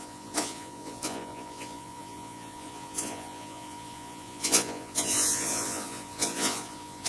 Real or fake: fake